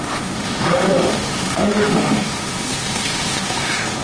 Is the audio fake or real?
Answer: fake